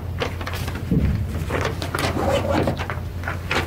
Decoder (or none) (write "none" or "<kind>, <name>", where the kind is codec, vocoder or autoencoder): none